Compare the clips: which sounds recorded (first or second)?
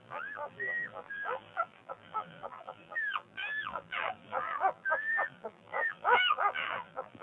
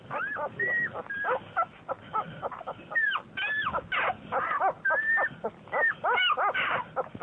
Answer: second